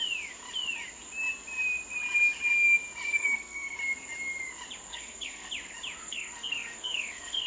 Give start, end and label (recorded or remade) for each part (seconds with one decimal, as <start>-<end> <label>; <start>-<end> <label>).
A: 0.0-3.1 recorded; 3.1-3.8 remade; 3.8-4.9 recorded; 4.9-5.5 remade; 5.5-6.0 recorded; 6.0-7.5 remade